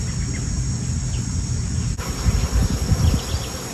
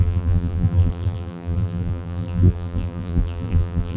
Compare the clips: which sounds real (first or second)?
first